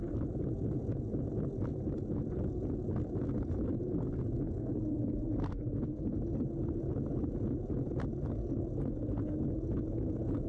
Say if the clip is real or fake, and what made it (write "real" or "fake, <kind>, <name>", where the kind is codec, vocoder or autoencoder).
real